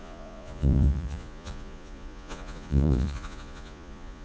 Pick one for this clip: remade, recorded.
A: remade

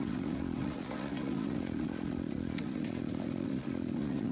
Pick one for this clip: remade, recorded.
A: remade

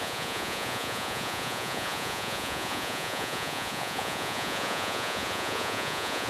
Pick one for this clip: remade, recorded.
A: remade